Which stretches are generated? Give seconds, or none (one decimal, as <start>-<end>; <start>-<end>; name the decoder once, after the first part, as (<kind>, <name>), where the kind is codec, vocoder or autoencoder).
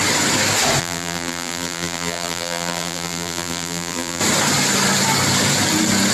0.8-4.2 (vocoder, BigVGAN v2)